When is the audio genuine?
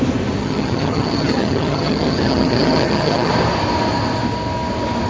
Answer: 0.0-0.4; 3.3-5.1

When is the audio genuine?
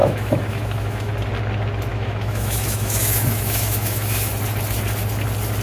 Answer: 1.1-1.9; 4.3-5.6